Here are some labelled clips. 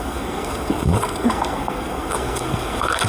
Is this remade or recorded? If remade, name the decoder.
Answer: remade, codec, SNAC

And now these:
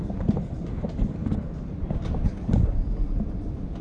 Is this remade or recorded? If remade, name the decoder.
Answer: recorded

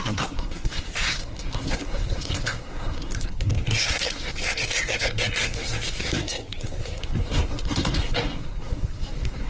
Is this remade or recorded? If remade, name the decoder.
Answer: remade, codec, SNAC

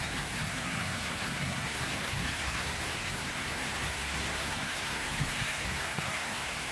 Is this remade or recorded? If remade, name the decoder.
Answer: remade, codec, SNAC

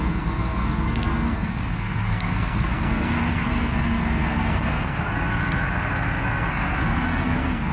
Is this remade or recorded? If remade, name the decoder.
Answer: remade, codec, SNAC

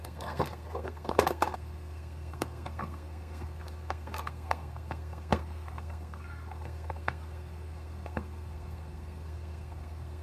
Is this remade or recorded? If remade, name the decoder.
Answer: remade, codec, SNAC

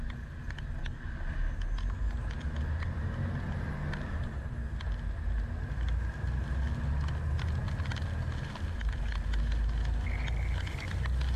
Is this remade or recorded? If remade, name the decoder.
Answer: recorded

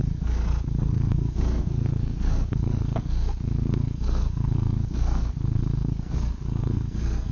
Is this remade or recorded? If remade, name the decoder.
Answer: remade, codec, SNAC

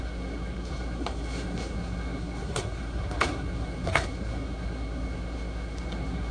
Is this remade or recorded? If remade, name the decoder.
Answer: remade, codec, SNAC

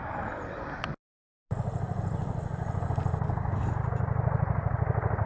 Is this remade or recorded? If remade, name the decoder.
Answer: recorded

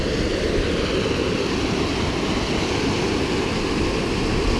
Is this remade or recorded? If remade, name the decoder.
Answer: recorded